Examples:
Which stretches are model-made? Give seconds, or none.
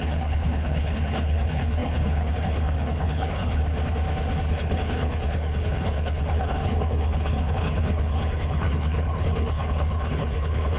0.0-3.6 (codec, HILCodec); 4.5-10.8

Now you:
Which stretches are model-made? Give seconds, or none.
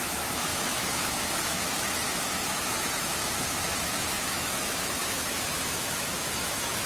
0.0-6.9 (autoencoder, DAC-VAE)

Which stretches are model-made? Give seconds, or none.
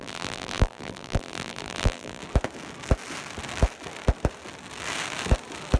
0.0-2.2 (vocoder, BigVGAN v2)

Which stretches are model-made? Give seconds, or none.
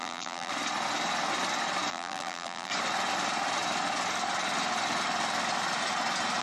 0.0-0.5 (vocoder, BigVGAN v2); 1.9-2.7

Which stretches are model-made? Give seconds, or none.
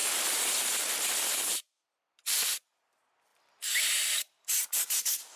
0.0-2.2 (vocoder, BigVGAN v2)